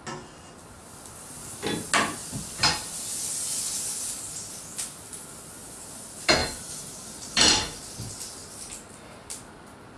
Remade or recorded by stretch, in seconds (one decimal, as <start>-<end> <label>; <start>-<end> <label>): 0.0-2.2 recorded; 2.2-3.6 remade; 3.6-6.4 recorded; 6.4-7.5 remade; 7.5-8.4 recorded; 8.4-9.6 remade; 9.6-10.0 recorded